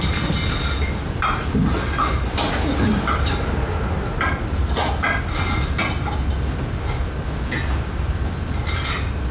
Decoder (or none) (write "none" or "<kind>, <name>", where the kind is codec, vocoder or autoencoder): none